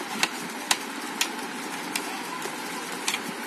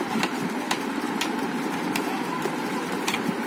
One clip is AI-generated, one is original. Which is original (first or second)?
first